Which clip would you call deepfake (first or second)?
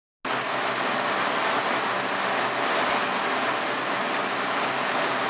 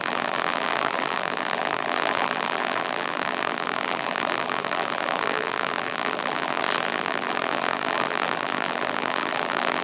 second